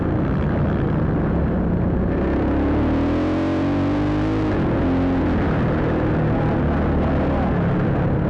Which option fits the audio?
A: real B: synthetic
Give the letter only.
A